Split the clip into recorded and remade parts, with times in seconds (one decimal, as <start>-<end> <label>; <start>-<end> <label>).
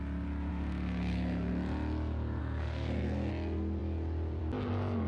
0.0-0.5 recorded; 0.5-1.5 remade; 1.5-2.4 recorded; 2.4-3.3 remade; 3.3-5.1 recorded